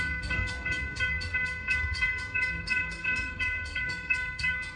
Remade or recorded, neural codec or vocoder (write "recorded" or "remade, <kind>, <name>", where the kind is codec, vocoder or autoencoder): remade, codec, SNAC